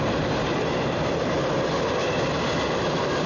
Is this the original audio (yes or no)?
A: yes